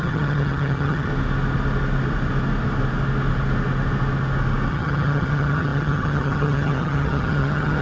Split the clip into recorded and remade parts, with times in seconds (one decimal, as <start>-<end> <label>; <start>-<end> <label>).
0.0-1.1 remade; 1.1-4.7 recorded; 4.7-7.8 remade